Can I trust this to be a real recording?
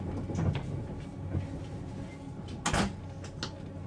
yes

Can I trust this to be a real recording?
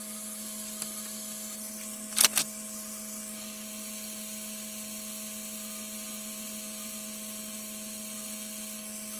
yes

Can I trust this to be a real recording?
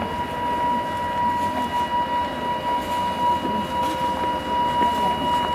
yes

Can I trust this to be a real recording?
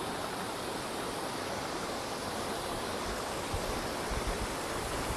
yes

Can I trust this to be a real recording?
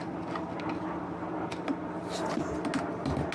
yes